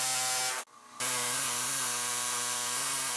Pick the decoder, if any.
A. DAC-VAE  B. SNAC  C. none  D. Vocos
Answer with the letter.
C